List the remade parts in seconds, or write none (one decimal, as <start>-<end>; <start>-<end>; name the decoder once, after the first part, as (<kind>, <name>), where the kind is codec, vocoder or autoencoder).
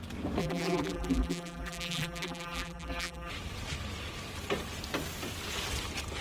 0.4-3.3 (vocoder, BigVGAN v2)